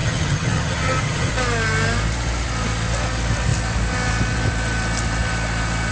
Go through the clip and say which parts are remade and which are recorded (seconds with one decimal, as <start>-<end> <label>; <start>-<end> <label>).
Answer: 0.0-1.3 remade; 1.3-5.9 recorded